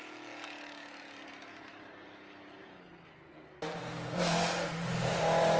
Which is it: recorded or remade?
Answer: recorded